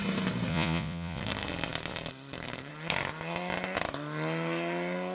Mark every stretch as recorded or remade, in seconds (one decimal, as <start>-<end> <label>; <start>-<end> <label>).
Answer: 0.0-0.5 recorded; 0.5-1.2 remade; 1.2-5.1 recorded